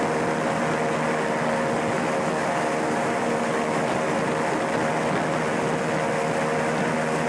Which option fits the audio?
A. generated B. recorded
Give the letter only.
B